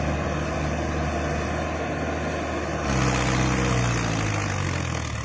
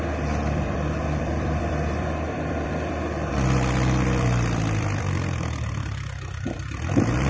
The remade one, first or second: second